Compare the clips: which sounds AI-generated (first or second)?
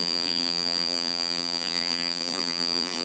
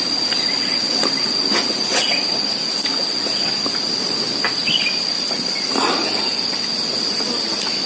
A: first